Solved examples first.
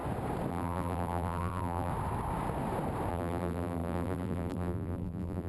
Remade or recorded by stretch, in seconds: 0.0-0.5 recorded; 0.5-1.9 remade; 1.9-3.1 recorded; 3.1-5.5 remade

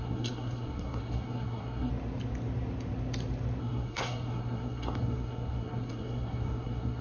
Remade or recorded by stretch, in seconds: 0.0-1.9 remade; 1.9-3.6 recorded; 3.6-7.0 remade

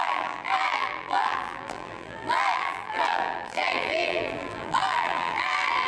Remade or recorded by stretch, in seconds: 0.0-5.9 remade

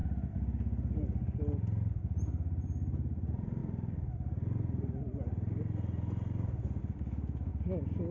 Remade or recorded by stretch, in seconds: 0.0-2.0 recorded; 2.0-3.6 remade; 3.6-6.8 recorded; 6.8-7.5 remade; 7.5-8.1 recorded

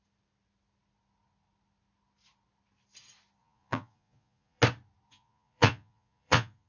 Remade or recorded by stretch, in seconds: 0.0-3.4 recorded; 3.4-4.6 remade; 4.6-5.1 recorded; 5.1-6.7 remade

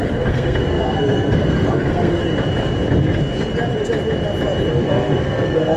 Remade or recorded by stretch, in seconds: 0.0-2.2 remade; 2.2-4.7 recorded; 4.7-5.8 remade

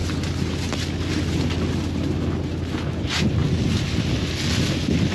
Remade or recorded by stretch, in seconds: 0.0-5.1 recorded

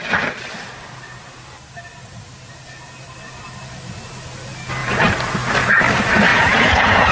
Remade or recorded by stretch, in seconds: 0.0-6.3 recorded; 6.3-7.1 remade